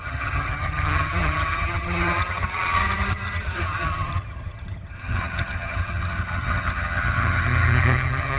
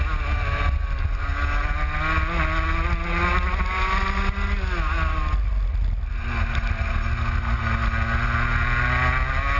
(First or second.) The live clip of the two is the second